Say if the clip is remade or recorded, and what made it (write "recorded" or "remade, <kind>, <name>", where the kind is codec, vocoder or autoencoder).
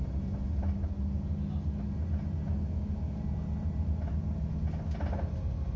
recorded